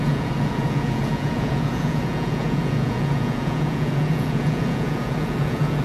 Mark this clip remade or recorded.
remade